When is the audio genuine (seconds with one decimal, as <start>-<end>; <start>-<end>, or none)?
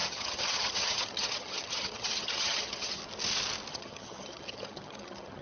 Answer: 3.0-3.7